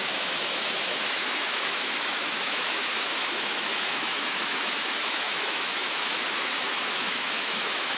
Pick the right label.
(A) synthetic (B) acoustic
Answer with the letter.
A